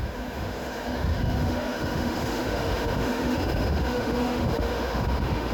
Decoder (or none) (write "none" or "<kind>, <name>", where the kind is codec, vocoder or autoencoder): autoencoder, DAC-VAE